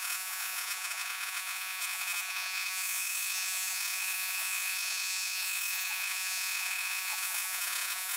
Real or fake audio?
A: fake